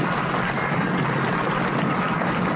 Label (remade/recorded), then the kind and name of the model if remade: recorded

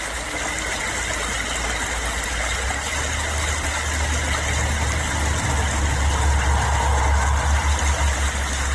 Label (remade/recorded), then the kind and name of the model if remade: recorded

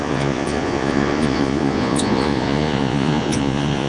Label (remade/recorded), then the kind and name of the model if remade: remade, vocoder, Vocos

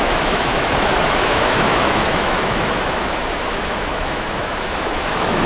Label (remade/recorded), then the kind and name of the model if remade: remade, autoencoder, DAC-VAE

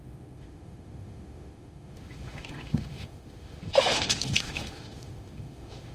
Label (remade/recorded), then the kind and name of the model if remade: remade, autoencoder, DAC-VAE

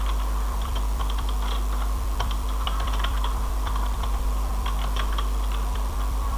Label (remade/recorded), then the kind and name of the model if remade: remade, vocoder, BigVGAN v2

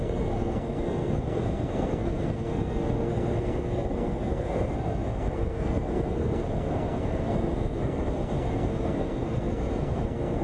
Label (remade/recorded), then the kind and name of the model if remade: remade, codec, SNAC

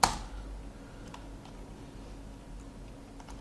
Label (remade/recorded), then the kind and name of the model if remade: recorded